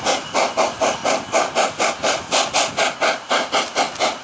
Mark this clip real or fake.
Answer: real